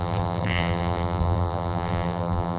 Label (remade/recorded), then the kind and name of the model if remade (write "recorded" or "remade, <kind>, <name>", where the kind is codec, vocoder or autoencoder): remade, vocoder, BigVGAN v2